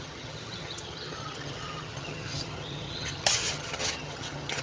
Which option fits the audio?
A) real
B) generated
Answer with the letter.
B